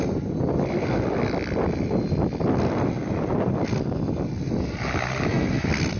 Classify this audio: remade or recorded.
recorded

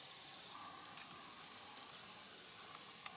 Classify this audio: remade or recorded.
recorded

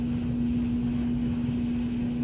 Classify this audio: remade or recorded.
recorded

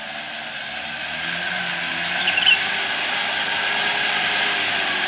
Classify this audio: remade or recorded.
recorded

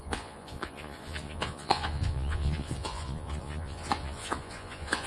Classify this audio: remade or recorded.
remade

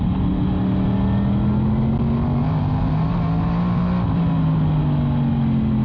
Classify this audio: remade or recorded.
recorded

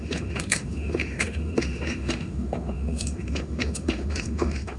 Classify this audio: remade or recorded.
remade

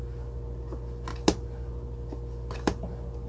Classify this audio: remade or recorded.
recorded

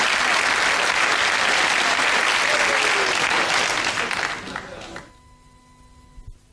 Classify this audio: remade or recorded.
recorded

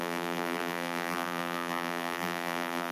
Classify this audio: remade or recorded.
remade